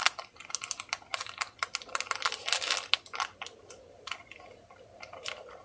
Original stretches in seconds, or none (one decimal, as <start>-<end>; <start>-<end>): 0.0-5.6